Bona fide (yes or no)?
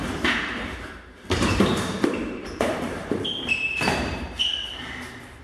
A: no